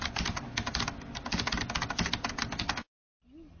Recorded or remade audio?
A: recorded